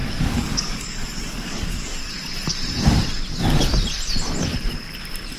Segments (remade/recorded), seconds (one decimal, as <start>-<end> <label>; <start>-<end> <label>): 0.0-2.1 remade; 2.1-5.4 recorded